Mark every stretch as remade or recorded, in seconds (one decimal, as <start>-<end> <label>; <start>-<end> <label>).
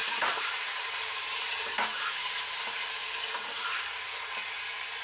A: 0.0-2.9 remade; 2.9-5.0 recorded